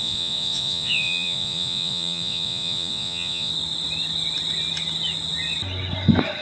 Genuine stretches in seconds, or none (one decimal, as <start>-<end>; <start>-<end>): 3.5-6.4